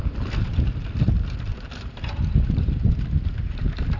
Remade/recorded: recorded